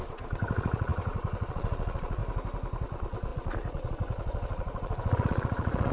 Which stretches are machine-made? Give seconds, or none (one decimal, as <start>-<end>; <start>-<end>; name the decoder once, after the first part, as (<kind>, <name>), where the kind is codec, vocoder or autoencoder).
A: 0.0-2.2 (vocoder, Vocos); 2.8-5.9